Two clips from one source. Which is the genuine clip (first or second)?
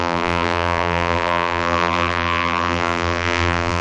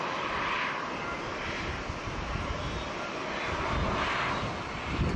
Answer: second